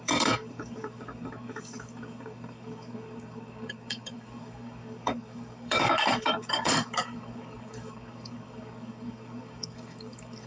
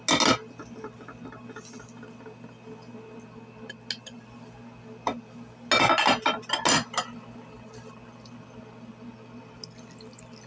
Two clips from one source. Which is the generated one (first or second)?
first